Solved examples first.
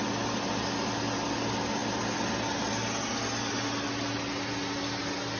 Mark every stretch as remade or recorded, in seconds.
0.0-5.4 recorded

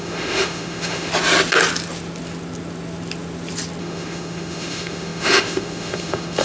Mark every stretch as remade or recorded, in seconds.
0.0-1.1 remade; 1.1-3.8 recorded; 3.8-6.4 remade

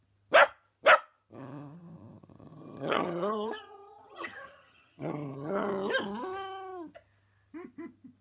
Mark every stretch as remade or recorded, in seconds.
0.0-2.5 recorded; 2.5-5.7 remade; 5.7-8.2 recorded

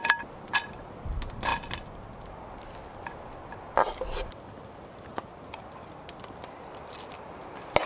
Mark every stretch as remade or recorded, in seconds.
0.0-7.9 recorded

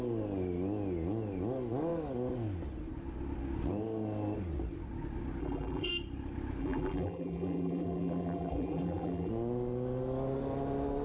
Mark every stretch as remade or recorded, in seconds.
0.0-5.4 recorded; 5.4-5.9 remade; 5.9-6.6 recorded; 6.6-9.3 remade; 9.3-11.0 recorded

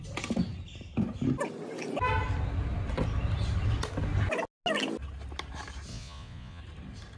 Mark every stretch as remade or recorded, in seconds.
0.0-5.9 recorded; 5.9-6.6 remade; 6.6-7.2 recorded